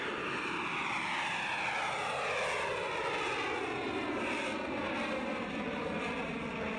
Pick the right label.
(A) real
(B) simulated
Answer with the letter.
A